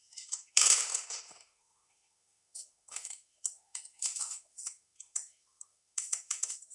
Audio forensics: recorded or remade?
remade